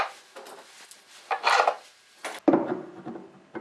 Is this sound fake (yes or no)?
no